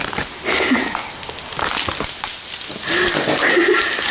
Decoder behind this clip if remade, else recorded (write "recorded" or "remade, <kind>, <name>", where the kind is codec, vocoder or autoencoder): recorded